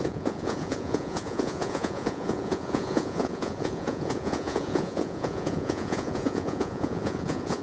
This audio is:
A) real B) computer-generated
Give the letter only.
B